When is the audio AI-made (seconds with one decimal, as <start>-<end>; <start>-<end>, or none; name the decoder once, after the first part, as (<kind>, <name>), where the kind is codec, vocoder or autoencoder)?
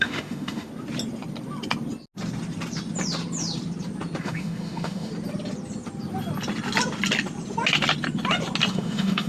0.0-0.7 (autoencoder, DAC-VAE); 4.2-5.1; 8.7-9.3